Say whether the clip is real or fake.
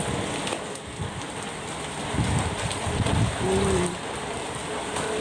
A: real